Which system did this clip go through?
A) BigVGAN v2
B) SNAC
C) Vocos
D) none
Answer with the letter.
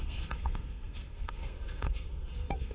B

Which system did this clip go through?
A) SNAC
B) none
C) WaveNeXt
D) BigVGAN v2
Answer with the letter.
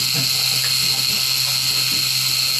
B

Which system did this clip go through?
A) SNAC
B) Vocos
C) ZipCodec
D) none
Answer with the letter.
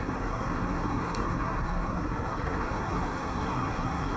A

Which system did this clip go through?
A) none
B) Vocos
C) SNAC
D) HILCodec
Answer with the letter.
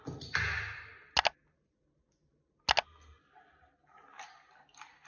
A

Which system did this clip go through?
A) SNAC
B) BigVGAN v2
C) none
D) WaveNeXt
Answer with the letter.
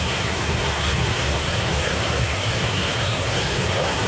A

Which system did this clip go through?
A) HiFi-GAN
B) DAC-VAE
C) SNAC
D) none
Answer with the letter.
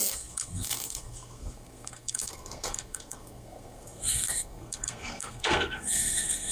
C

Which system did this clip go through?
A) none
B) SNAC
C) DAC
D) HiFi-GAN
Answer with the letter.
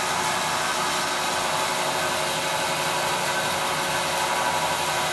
A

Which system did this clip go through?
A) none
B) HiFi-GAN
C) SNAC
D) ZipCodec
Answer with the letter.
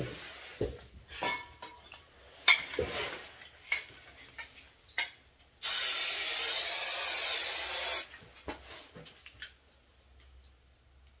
A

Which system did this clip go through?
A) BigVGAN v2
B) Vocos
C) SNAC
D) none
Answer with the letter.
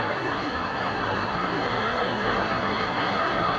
C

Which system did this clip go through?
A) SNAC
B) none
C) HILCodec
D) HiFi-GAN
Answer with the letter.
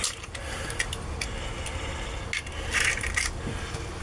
B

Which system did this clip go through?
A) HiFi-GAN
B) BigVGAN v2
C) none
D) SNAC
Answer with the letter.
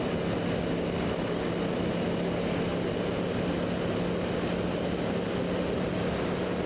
C